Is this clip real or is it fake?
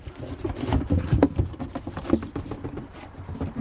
real